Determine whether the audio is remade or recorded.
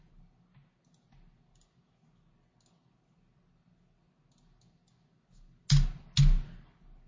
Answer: recorded